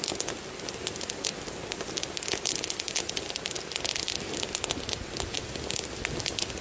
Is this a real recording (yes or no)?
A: yes